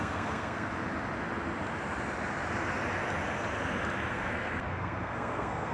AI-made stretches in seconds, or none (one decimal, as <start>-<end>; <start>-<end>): 0.0-0.7; 4.1-5.7